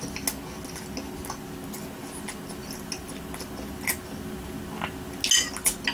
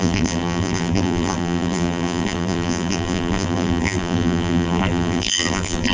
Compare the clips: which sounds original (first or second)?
first